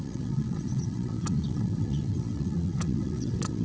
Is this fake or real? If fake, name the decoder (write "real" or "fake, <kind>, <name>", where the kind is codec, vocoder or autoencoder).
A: fake, vocoder, WaveNeXt